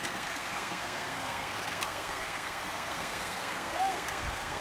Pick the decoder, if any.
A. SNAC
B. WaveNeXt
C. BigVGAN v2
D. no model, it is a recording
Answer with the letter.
A